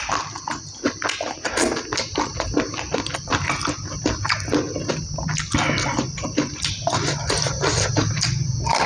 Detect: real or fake real